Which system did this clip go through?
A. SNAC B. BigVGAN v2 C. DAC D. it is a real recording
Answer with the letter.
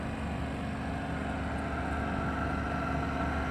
D